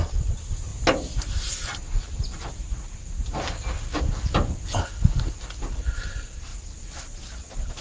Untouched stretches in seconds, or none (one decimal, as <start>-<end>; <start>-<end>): 0.0-7.8